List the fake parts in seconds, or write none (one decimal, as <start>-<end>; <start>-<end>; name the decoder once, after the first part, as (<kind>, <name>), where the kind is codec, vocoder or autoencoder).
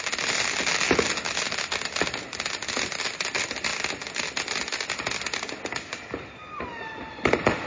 none